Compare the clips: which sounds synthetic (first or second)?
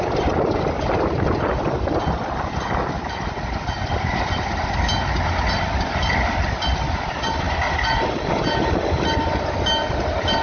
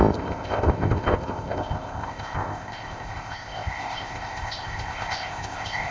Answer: second